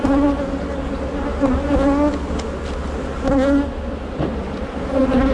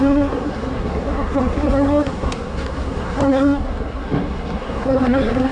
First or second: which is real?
first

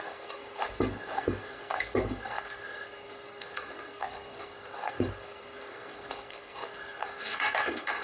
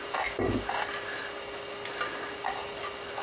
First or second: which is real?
second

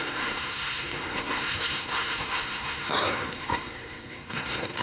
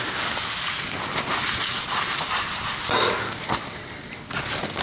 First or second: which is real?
second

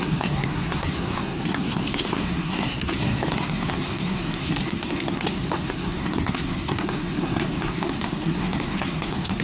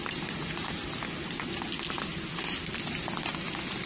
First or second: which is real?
second